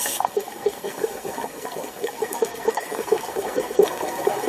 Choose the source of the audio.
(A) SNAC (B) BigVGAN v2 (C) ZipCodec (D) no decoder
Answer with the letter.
A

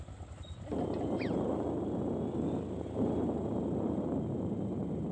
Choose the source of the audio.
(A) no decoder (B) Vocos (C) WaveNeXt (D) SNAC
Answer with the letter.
A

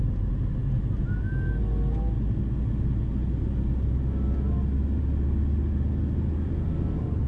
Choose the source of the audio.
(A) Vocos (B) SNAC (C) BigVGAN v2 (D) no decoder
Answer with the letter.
D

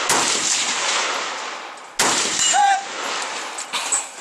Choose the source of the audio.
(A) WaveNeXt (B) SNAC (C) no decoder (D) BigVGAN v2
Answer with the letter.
C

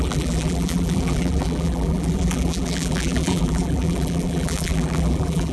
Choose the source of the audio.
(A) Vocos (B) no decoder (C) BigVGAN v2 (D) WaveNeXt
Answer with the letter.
C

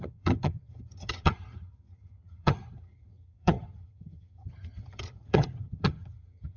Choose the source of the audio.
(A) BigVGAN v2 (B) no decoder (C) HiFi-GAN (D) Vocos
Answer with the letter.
C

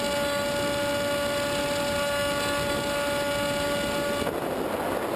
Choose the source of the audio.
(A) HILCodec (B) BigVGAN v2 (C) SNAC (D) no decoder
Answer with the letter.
D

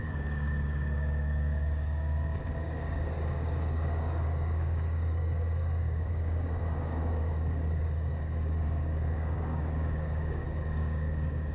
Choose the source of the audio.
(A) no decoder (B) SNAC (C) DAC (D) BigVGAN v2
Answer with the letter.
C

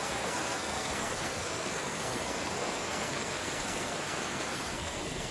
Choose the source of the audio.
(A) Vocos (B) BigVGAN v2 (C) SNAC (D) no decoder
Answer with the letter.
C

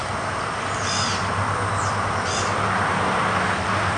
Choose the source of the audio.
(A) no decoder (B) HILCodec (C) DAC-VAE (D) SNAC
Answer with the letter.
A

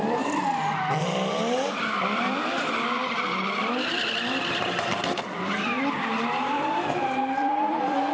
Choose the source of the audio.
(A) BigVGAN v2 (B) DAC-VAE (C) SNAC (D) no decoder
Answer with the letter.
A